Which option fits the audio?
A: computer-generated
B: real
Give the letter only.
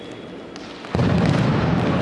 B